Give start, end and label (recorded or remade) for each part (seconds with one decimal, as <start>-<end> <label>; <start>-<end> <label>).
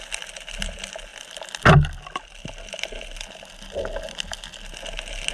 0.0-5.3 recorded